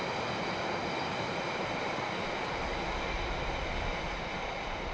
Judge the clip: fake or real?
real